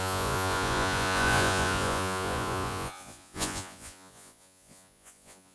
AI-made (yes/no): yes